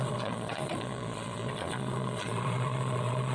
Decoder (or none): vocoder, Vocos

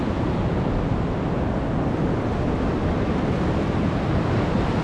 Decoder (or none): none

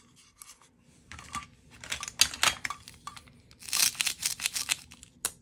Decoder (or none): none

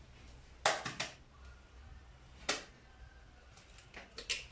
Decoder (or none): none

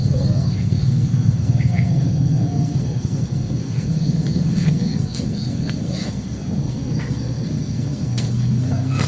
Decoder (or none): codec, SNAC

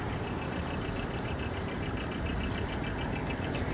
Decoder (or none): vocoder, BigVGAN v2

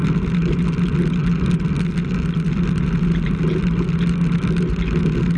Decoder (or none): none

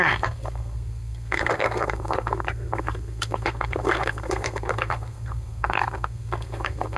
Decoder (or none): codec, SNAC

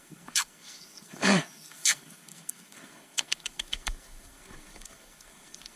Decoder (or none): codec, SNAC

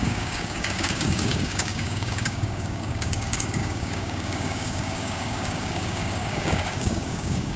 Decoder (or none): codec, DAC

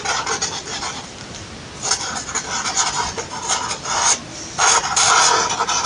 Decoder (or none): none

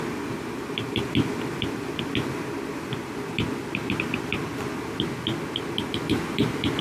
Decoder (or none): none